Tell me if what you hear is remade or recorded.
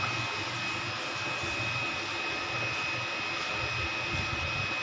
recorded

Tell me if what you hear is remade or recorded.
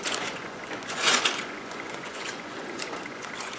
remade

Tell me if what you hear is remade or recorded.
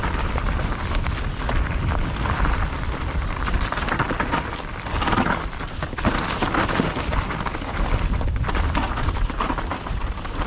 recorded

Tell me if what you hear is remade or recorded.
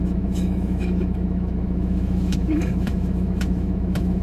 remade